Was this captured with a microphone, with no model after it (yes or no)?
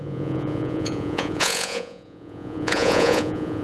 no